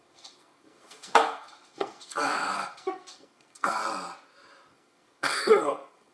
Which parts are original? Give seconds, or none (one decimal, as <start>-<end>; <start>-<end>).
3.8-4.7